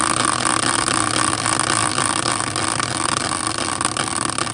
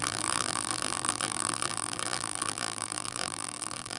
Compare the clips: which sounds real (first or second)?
first